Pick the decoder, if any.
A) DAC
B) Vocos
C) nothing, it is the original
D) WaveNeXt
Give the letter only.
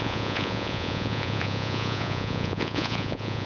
B